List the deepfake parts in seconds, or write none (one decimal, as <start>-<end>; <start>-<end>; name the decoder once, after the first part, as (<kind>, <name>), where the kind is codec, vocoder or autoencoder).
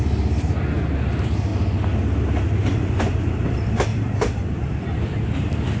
none